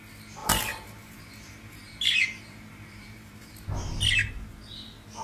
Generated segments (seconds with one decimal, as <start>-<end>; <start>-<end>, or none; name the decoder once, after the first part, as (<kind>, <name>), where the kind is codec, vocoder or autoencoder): 0.4-3.5 (vocoder, BigVGAN v2)